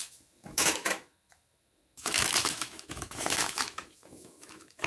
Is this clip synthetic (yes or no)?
yes